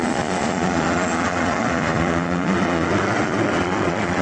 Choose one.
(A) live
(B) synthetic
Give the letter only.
B